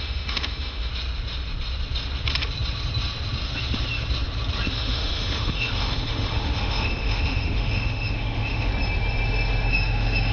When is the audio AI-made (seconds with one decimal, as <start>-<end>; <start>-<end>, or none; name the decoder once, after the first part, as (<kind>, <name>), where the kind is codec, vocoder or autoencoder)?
0.0-0.9 (autoencoder, DAC-VAE); 4.7-8.7; 9.7-10.3